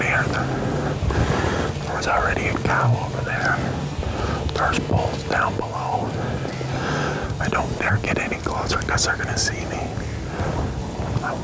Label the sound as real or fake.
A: real